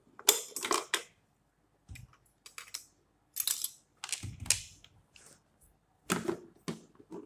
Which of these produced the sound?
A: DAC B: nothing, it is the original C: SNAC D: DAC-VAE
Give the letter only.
B